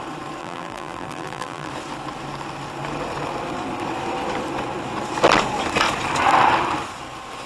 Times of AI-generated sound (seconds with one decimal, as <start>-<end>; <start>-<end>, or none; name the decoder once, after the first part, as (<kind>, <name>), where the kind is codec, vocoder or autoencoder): 0.4-1.7 (vocoder, BigVGAN v2)